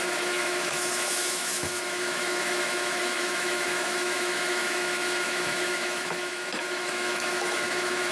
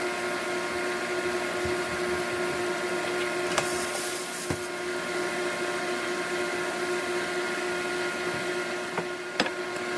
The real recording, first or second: second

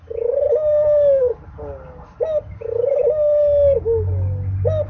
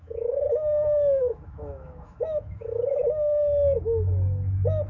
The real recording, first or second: first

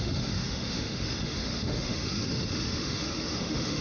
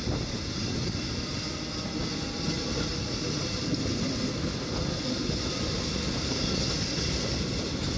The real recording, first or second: second